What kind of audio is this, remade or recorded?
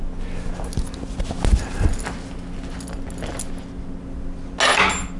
recorded